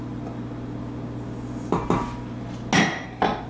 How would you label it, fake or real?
real